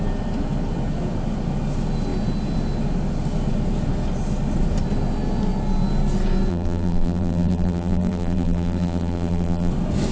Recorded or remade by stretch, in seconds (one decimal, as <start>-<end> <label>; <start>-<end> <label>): 0.0-6.5 recorded; 6.5-9.7 remade; 9.7-10.1 recorded